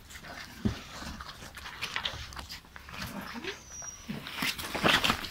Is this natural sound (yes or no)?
yes